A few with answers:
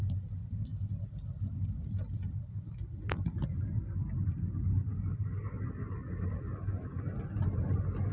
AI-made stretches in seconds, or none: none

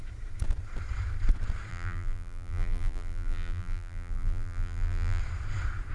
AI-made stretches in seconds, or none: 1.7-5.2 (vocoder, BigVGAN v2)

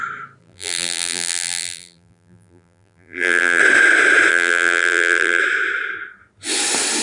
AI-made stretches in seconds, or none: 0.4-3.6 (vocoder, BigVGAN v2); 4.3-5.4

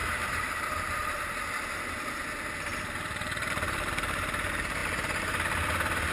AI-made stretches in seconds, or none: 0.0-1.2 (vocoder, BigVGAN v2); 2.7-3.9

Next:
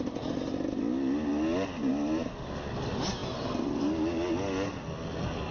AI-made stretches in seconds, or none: none

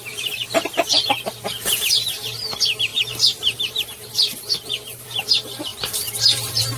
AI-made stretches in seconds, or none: 0.0-6.8 (vocoder, BigVGAN v2)